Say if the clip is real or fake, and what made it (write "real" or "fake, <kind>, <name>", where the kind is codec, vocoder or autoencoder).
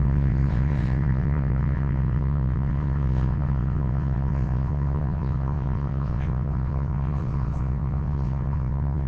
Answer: fake, vocoder, WaveNeXt